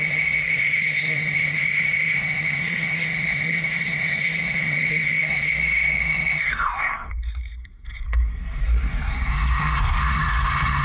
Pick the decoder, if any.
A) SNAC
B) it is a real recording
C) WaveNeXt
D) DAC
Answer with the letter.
A